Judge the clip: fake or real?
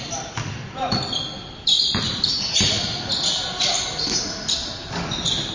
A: real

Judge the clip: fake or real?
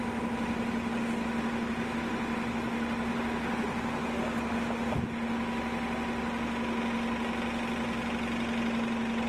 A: real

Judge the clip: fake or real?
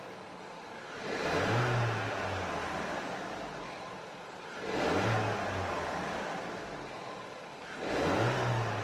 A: real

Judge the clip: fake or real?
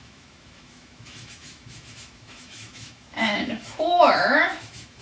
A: fake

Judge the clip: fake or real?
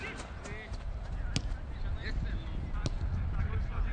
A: real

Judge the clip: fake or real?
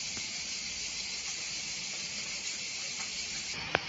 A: real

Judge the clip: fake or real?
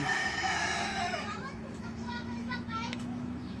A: fake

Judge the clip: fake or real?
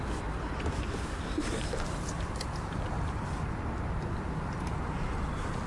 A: real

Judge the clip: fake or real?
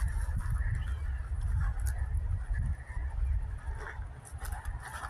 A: real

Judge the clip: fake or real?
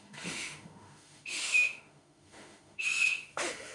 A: fake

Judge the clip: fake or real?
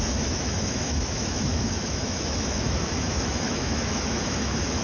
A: fake